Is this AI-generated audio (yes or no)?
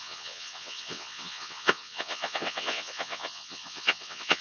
yes